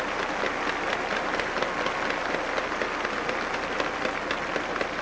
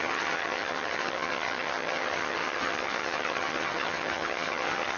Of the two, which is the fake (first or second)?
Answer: second